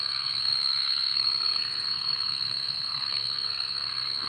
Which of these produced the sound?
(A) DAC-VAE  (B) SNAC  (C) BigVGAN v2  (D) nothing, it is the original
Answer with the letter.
B